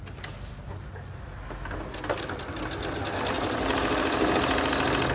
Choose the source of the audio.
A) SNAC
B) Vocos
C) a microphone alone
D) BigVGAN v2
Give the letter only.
C